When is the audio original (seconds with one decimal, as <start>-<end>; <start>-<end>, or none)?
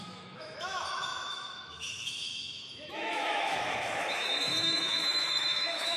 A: none